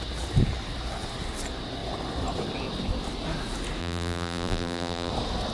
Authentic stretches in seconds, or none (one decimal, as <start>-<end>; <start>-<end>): 0.0-3.8; 5.1-5.5